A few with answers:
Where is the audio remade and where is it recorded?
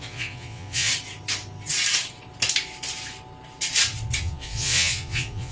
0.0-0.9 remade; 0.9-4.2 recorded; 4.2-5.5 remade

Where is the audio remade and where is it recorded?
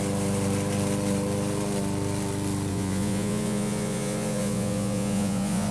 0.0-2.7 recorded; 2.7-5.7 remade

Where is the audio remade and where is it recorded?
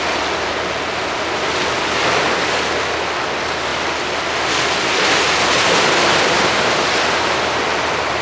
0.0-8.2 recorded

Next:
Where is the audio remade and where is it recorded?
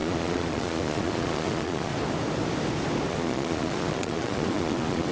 0.0-1.9 remade; 1.9-3.1 recorded; 3.1-5.1 remade